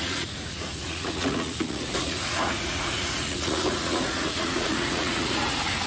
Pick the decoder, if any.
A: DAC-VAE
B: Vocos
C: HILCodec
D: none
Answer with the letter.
B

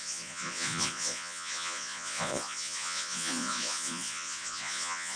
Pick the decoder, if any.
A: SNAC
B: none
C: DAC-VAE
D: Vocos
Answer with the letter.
D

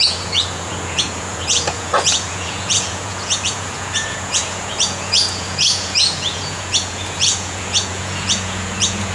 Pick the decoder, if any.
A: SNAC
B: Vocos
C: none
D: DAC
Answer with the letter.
B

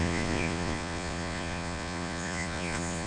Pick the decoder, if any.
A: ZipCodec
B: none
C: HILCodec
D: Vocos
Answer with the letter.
D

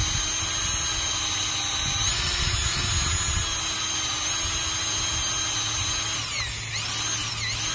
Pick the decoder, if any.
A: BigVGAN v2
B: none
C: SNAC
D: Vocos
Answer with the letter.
B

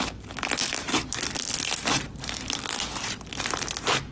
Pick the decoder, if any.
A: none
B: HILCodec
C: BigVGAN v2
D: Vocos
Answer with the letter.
A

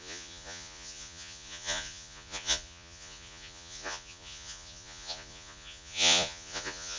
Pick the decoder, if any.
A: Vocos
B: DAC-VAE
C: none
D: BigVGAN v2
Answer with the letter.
A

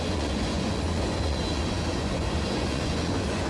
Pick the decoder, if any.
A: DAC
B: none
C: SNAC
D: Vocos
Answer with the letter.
D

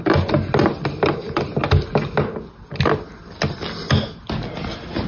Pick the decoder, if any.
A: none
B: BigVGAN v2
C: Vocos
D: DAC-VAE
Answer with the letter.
A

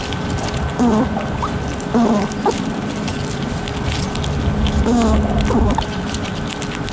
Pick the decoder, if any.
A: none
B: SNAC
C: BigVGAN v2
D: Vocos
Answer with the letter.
A